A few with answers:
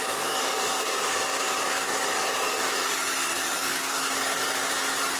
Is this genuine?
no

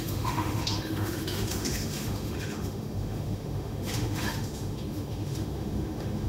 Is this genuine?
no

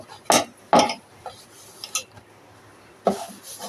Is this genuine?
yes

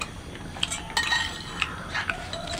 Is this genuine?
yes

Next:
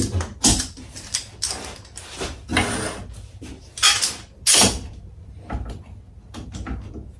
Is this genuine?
yes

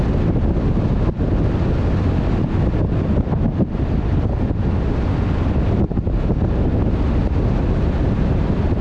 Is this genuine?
yes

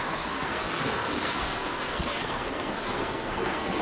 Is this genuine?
no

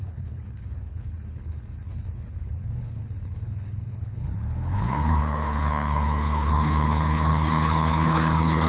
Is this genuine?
no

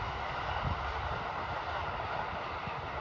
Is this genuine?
yes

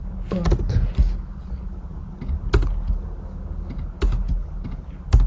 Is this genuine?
yes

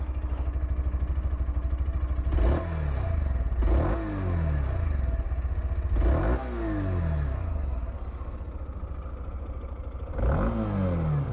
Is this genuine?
yes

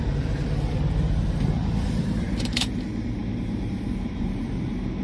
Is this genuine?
no